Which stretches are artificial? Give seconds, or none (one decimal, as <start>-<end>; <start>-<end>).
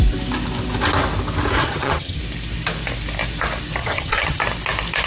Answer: 1.6-2.2; 3.8-4.4